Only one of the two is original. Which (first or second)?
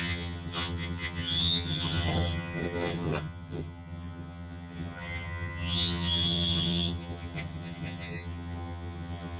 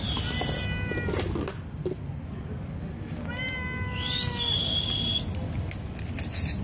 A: second